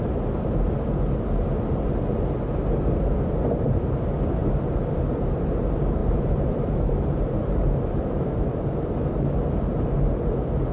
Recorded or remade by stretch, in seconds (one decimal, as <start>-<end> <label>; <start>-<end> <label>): 0.0-6.0 recorded; 6.0-8.9 remade; 8.9-10.7 recorded